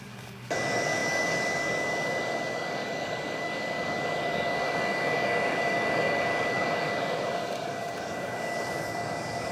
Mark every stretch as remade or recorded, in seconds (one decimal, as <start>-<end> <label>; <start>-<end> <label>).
0.0-9.5 remade